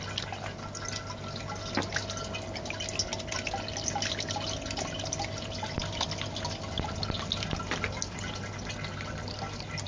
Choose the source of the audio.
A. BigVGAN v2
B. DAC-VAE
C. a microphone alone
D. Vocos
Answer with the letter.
C